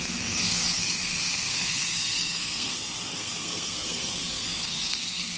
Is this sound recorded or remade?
remade